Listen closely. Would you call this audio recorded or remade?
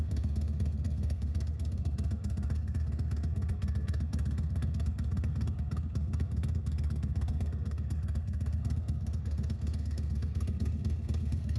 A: remade